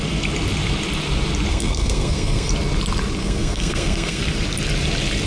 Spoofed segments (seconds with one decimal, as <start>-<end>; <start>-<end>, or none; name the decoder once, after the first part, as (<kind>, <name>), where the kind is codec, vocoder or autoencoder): 1.5-2.5 (codec, SNAC); 3.2-4.2